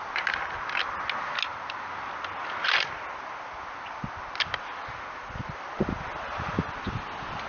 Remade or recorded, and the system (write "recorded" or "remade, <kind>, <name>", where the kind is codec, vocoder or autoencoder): recorded